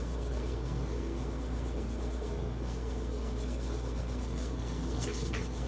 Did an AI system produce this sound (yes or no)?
yes